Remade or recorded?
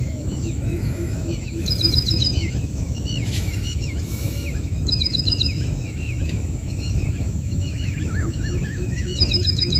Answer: remade